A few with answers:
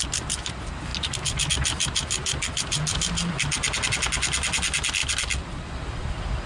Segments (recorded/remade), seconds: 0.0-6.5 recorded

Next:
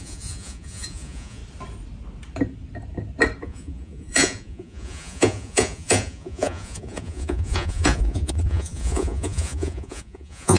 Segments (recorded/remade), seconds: 0.0-1.4 remade; 1.4-3.4 recorded; 3.4-10.6 remade